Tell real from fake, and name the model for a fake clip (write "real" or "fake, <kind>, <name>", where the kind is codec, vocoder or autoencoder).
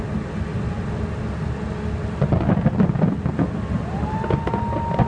real